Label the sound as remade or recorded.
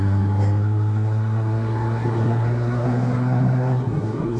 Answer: remade